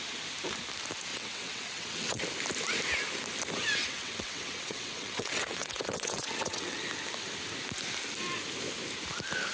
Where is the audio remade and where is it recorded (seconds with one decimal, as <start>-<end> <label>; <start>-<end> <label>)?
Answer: 0.0-1.1 recorded; 1.1-2.2 remade; 2.2-3.8 recorded; 3.8-6.8 remade; 6.8-9.5 recorded